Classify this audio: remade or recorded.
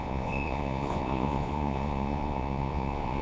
remade